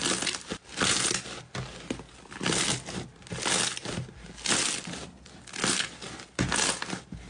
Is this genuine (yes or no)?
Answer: yes